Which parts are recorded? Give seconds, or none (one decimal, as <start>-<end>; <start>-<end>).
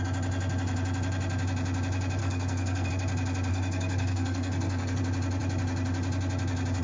0.0-2.2; 2.9-3.5; 5.0-6.8